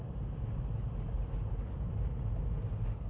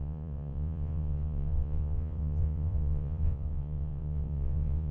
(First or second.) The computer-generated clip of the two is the second